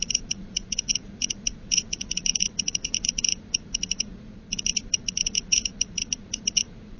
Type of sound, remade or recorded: remade